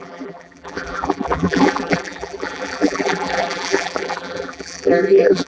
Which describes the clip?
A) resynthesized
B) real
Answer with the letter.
A